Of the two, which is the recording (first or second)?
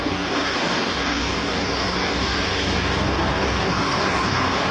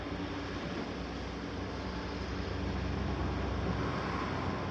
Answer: second